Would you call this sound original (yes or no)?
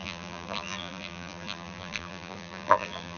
no